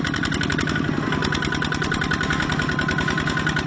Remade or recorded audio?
recorded